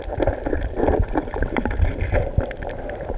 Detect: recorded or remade recorded